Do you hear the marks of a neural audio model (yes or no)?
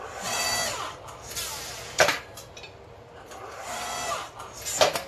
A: no